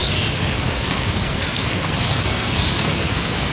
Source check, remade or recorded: remade